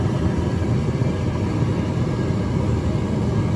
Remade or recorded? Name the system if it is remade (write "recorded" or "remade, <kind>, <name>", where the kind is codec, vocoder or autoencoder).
recorded